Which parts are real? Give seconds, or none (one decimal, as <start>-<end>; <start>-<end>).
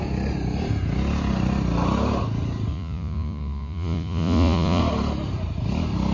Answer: 0.0-2.7; 4.8-6.1